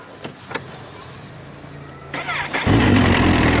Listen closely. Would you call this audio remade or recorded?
recorded